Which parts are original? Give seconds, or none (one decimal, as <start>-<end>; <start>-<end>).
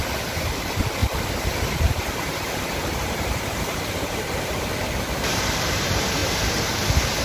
6.2-7.2